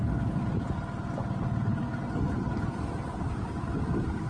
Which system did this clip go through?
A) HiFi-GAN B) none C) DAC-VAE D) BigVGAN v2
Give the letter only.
B